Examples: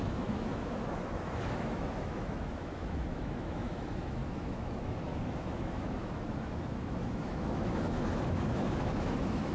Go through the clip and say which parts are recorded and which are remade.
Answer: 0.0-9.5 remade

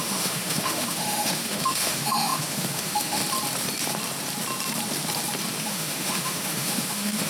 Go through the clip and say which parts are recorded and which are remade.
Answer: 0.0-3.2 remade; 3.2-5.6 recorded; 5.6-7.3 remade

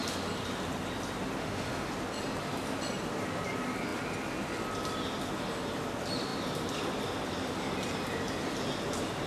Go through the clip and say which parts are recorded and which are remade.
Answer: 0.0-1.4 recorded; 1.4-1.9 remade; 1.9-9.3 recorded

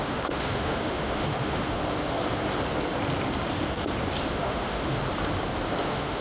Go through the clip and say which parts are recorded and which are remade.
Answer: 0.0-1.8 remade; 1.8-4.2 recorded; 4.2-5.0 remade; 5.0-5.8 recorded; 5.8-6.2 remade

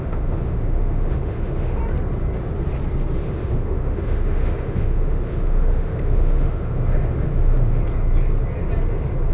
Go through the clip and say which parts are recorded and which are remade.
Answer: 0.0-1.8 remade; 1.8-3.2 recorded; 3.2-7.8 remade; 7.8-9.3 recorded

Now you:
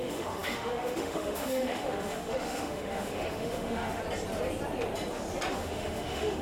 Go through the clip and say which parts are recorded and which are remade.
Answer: 0.0-4.0 remade; 4.0-5.5 recorded; 5.5-6.4 remade